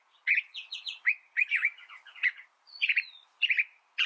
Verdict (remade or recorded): remade